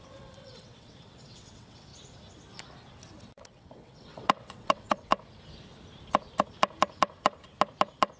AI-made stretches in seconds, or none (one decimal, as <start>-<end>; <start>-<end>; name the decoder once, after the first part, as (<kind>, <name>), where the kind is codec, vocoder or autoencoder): 0.0-1.9 (vocoder, WaveNeXt); 3.2-5.1